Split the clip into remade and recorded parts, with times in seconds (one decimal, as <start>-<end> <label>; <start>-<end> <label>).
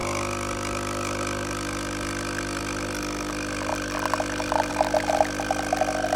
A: 0.0-6.2 recorded